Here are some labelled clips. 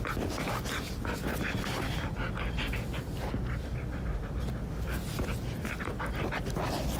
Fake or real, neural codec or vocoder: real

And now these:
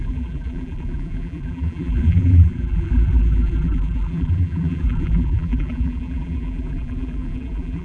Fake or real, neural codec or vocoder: fake, vocoder, BigVGAN v2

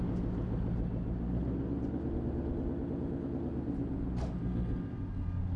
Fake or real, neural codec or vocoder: real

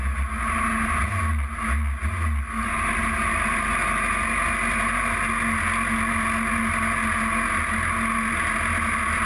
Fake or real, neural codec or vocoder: real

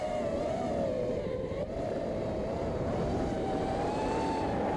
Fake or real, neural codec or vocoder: fake, vocoder, BigVGAN v2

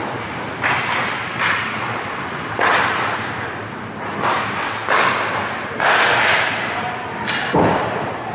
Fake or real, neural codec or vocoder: real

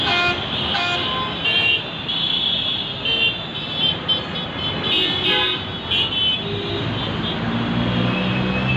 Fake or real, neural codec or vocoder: real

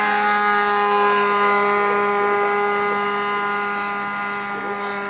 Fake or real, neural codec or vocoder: real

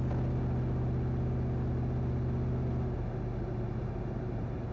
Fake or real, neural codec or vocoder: real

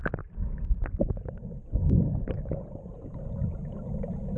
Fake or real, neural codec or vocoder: real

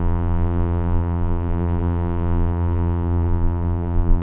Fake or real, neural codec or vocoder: fake, vocoder, BigVGAN v2